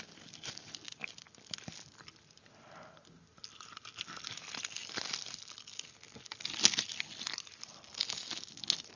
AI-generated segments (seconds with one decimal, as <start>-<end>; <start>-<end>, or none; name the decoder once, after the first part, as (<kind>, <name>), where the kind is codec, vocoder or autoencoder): none